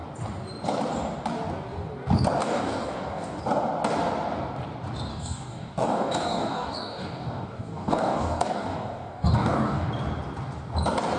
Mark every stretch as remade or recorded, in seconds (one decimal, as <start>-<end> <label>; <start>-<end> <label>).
0.0-2.4 recorded; 2.4-3.4 remade; 3.4-5.1 recorded; 5.1-9.9 remade; 9.9-11.2 recorded